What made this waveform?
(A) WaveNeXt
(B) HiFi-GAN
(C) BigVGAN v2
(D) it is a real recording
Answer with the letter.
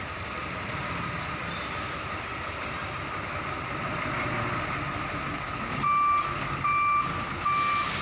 D